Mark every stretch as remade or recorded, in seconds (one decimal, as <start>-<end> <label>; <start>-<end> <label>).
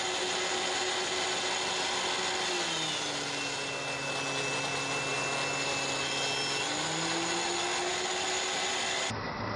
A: 0.0-9.6 recorded